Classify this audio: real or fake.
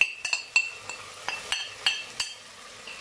real